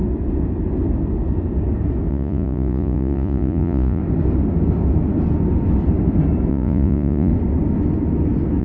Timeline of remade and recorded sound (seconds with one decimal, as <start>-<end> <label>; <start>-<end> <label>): 0.0-2.1 recorded; 2.1-4.0 remade; 4.0-6.5 recorded; 6.5-7.3 remade; 7.3-8.6 recorded